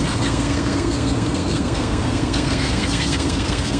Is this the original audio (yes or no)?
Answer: no